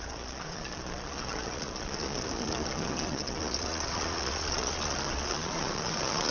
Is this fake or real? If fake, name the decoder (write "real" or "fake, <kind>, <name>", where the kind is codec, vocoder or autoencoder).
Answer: fake, vocoder, Vocos